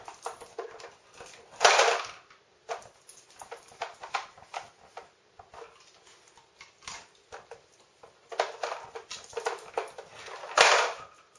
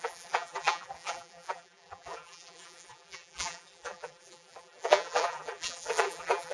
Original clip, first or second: first